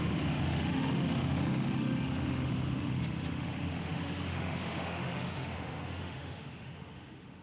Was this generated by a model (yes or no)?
yes